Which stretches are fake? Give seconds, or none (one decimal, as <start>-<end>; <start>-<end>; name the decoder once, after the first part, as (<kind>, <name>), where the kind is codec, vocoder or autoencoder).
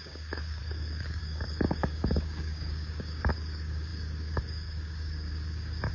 0.0-5.9 (codec, DAC)